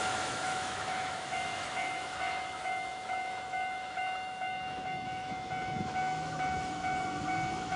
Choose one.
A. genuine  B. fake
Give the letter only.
B